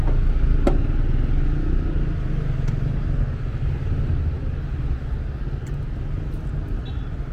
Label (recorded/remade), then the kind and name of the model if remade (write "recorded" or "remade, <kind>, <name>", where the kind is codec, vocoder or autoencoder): recorded